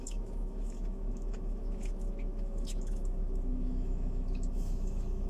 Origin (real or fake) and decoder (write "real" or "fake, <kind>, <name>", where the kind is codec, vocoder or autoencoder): fake, autoencoder, DAC-VAE